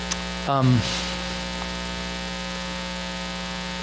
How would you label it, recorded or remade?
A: recorded